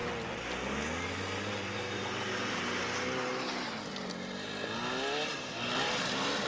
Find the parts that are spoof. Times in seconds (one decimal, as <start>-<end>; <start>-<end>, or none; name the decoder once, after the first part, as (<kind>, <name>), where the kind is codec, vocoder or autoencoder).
none